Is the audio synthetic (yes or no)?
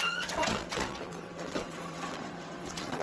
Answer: yes